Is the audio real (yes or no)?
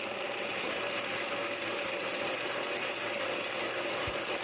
no